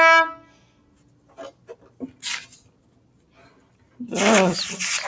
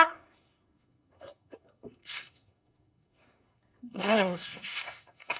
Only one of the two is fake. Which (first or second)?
second